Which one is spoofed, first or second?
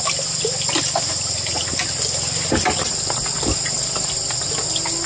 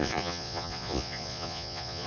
second